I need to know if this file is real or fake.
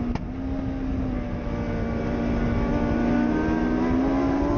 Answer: real